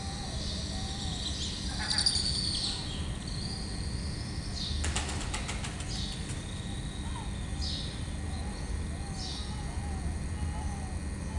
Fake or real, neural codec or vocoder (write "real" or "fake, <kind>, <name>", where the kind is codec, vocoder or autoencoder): real